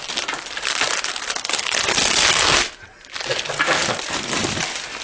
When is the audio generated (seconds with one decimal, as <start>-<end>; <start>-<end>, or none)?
none